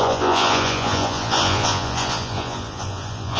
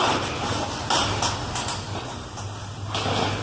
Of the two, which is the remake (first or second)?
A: first